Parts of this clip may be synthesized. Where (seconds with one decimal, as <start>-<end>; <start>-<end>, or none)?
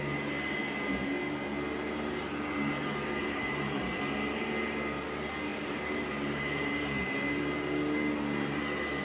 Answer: 3.2-3.9; 5.5-7.0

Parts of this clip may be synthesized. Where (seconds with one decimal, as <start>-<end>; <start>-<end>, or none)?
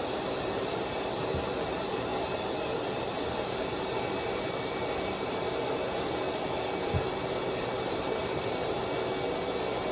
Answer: 0.0-5.8; 6.7-8.8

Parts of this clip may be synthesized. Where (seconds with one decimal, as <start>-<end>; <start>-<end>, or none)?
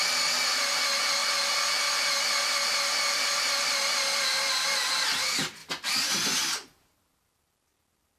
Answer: 5.6-6.8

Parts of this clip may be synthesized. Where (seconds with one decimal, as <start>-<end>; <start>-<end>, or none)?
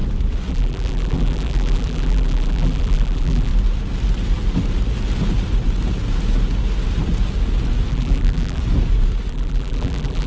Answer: 0.5-3.5; 7.9-8.6; 9.3-10.3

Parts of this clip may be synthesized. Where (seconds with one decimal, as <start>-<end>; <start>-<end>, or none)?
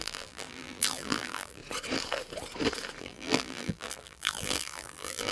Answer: 0.0-1.6; 3.0-5.3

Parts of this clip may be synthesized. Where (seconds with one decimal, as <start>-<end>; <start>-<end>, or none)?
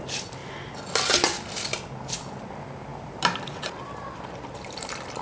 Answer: 2.9-3.4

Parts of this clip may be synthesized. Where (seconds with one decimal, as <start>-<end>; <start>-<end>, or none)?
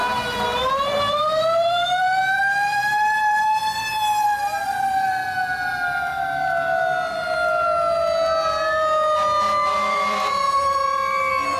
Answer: 0.0-5.2; 9.9-11.6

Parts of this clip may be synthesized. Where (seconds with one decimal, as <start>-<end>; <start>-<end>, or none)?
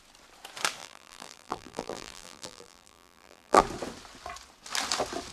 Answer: 0.8-3.6